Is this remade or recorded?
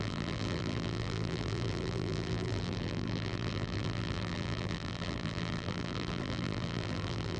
remade